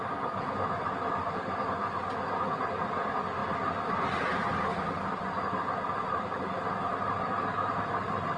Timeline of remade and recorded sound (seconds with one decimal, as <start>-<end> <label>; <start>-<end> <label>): 0.0-8.4 recorded